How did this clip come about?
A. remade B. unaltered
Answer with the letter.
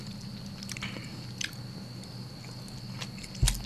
B